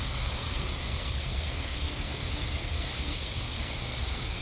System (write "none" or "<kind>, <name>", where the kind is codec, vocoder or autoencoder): codec, SNAC